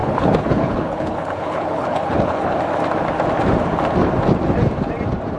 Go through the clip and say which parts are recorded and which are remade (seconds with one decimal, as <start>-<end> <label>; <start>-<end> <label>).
0.0-2.6 remade; 2.6-5.4 recorded